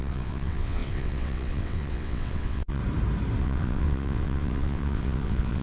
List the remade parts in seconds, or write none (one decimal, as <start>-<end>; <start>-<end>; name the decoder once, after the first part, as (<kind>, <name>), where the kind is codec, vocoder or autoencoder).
0.0-2.8 (vocoder, WaveNeXt); 3.4-5.6